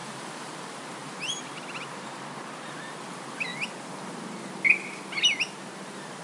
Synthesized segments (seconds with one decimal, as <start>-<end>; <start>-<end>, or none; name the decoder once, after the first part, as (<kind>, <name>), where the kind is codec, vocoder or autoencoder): none